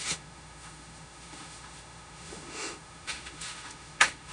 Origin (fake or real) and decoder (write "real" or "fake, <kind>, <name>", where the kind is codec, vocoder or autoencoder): fake, autoencoder, DAC-VAE